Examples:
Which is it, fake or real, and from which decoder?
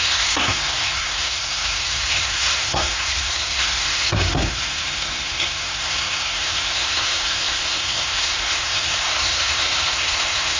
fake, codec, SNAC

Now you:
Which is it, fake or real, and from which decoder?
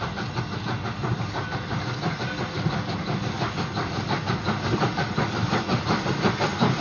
real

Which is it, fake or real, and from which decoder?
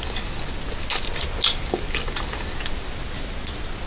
real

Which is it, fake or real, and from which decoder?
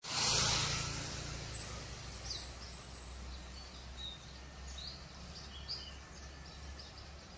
real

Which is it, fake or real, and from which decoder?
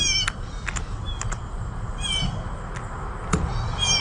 real